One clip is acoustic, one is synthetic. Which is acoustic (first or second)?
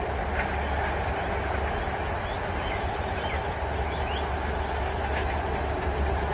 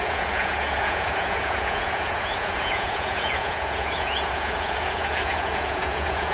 first